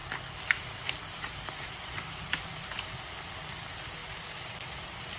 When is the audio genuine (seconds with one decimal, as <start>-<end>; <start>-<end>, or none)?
0.0-1.7; 2.7-3.6